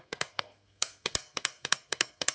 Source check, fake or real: fake